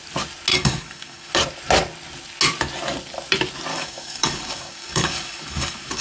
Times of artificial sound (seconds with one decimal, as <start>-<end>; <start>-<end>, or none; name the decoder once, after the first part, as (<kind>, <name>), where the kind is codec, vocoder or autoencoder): 0.5-1.3 (codec, DAC); 3.7-6.0